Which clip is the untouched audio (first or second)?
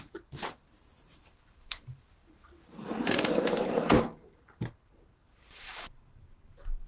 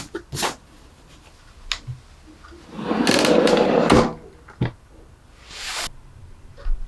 second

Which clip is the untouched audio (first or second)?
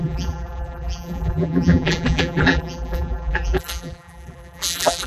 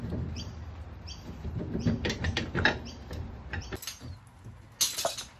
second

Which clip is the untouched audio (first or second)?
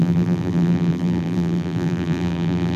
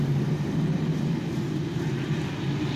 second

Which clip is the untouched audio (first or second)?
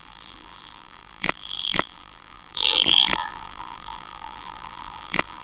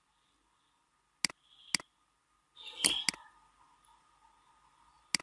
second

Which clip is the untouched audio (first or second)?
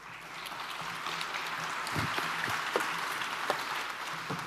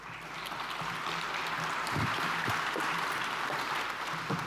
first